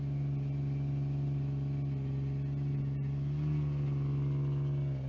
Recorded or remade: recorded